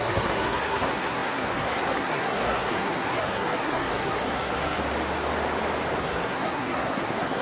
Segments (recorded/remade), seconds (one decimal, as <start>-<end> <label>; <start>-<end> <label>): 0.0-4.8 remade; 4.8-6.0 recorded; 6.0-7.4 remade